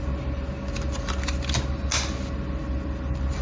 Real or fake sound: real